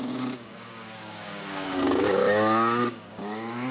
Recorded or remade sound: remade